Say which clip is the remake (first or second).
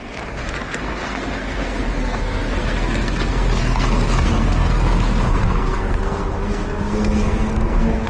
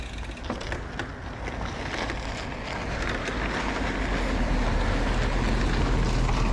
first